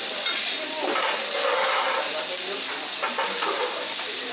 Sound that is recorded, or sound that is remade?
recorded